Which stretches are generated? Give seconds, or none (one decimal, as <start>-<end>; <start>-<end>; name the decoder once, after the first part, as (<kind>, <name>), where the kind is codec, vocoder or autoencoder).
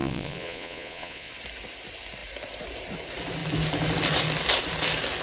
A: 0.0-1.3 (vocoder, Vocos)